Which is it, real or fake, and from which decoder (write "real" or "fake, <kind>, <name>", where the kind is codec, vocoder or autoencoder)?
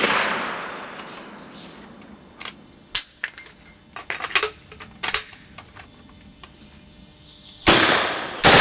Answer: real